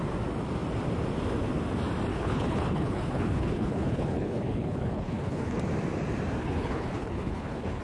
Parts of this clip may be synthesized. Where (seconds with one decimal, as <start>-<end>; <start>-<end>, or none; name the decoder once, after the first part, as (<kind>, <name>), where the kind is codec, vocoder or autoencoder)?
2.1-5.6 (codec, HILCodec); 6.4-7.8